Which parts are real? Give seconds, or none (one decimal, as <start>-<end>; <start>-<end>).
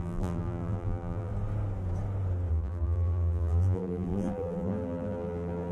1.3-2.5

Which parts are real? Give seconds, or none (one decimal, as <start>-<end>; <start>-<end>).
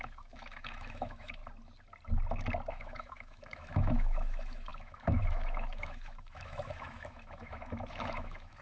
1.4-2.7